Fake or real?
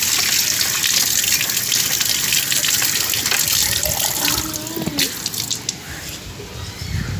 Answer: real